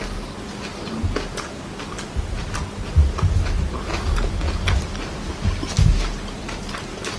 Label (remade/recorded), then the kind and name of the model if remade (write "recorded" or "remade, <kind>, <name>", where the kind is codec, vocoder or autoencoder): recorded